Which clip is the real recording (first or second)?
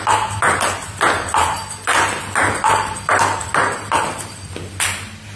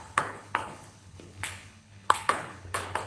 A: first